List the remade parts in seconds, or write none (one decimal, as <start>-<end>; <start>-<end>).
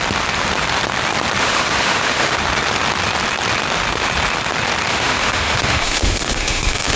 1.4-2.4; 4.9-7.0